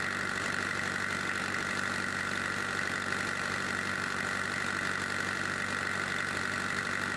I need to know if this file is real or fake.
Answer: fake